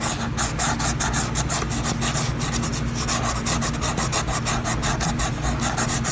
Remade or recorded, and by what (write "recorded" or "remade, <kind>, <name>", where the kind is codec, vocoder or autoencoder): recorded